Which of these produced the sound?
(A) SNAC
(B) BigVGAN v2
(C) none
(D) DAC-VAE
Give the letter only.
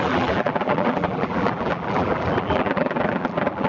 B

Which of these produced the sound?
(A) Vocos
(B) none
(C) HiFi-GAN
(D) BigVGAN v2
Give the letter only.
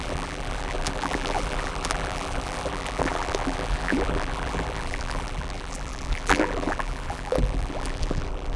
D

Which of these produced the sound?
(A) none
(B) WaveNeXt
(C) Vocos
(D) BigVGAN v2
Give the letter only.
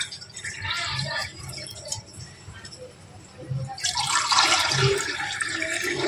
D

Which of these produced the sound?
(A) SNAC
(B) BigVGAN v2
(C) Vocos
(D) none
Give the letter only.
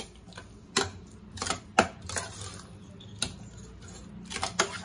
D